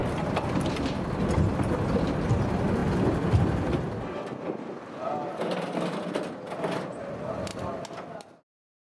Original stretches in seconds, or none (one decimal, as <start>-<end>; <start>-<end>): 0.0-9.0